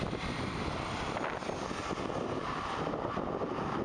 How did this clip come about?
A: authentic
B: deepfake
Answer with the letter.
A